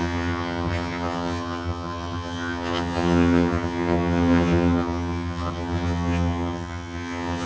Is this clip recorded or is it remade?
remade